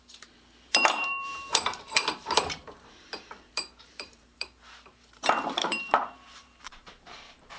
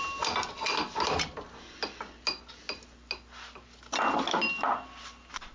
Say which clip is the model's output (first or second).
first